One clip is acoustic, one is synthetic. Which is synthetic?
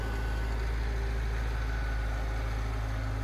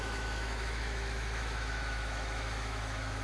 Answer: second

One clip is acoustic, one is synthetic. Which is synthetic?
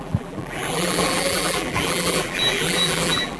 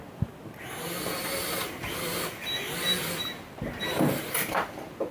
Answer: first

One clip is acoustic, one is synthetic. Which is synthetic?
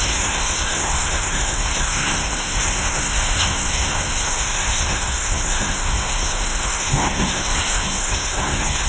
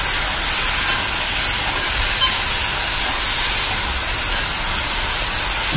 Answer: first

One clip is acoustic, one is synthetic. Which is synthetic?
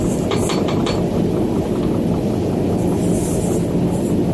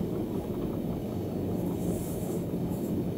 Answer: second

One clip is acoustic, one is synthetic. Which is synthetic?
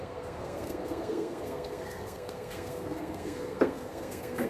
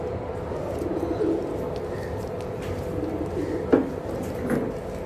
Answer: first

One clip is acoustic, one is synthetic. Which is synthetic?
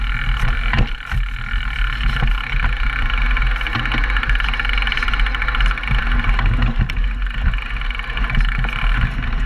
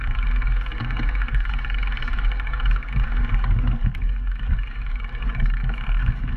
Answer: second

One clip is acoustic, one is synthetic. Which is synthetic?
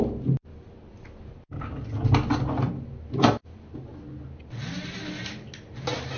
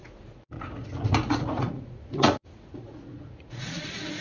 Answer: second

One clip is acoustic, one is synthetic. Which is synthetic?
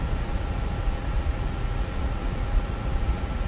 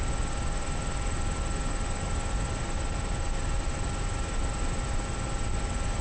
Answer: first